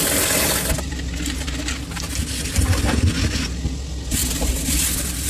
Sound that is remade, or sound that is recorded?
recorded